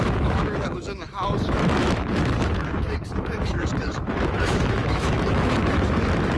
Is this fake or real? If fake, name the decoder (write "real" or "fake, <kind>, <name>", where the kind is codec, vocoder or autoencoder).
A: fake, autoencoder, DAC-VAE